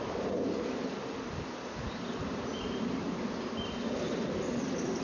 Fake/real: real